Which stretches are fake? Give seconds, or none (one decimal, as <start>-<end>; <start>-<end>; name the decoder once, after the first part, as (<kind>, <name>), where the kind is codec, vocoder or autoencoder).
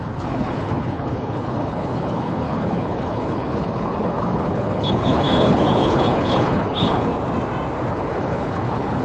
0.0-7.1 (codec, HILCodec); 7.9-9.0